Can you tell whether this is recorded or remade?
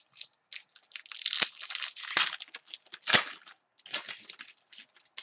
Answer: recorded